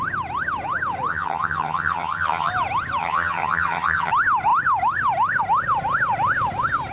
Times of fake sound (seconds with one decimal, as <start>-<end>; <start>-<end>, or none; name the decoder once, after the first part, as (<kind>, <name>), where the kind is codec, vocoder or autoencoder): 1.1-2.5 (vocoder, HiFi-GAN); 3.0-4.1

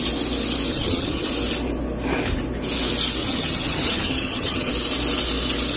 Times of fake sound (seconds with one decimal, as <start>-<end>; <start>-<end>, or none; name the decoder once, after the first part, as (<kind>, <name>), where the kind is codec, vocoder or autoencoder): 0.7-1.3 (vocoder, HiFi-GAN); 3.2-4.7

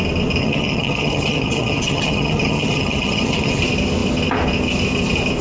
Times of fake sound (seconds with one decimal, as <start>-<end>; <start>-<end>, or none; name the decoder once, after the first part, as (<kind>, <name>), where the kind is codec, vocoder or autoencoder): 0.4-3.6 (vocoder, HiFi-GAN)

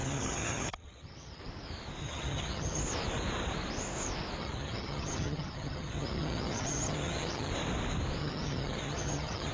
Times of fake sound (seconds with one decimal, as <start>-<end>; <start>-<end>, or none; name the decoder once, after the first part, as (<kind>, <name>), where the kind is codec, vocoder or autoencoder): 0.0-1.4 (vocoder, HiFi-GAN); 2.0-2.8; 4.4-7.5; 8.2-9.5

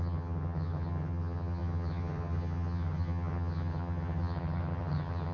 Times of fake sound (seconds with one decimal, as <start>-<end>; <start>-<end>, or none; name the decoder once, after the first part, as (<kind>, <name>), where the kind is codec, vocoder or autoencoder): 0.0-5.3 (vocoder, HiFi-GAN)